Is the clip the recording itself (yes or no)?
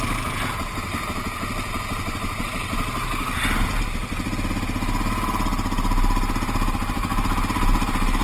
yes